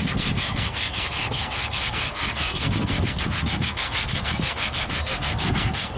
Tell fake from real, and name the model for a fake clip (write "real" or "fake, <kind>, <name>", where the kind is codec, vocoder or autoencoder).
fake, codec, SNAC